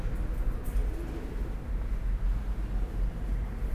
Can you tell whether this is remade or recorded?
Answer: recorded